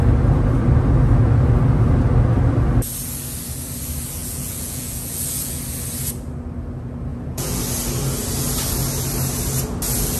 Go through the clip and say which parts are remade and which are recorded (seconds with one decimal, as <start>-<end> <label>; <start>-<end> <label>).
0.0-4.2 recorded; 4.2-5.6 remade; 5.6-7.1 recorded; 7.1-7.6 remade; 7.6-10.2 recorded